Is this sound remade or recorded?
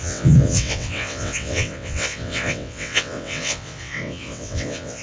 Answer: remade